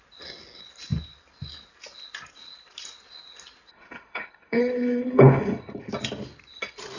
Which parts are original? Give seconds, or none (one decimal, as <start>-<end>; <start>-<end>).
0.0-3.7; 5.9-7.0